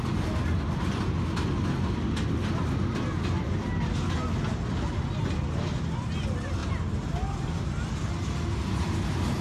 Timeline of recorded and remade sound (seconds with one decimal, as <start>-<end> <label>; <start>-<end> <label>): 0.0-9.4 recorded